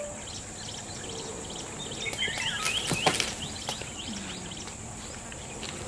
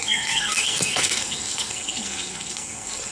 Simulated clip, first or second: second